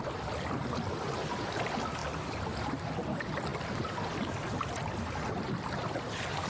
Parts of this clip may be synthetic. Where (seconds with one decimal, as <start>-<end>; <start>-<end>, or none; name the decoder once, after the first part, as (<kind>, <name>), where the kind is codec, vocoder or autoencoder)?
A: none